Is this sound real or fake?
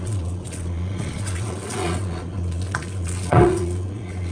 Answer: fake